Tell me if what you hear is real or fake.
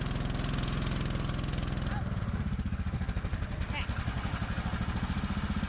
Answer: real